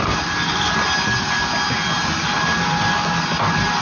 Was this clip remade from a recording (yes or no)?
no